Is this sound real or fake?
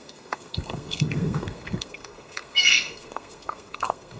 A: fake